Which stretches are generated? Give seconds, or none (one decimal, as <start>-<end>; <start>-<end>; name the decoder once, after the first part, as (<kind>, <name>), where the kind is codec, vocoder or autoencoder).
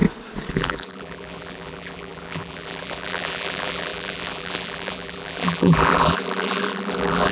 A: 0.5-7.3 (vocoder, BigVGAN v2)